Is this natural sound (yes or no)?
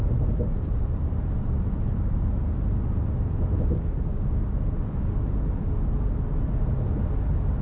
yes